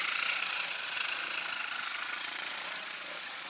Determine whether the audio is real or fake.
fake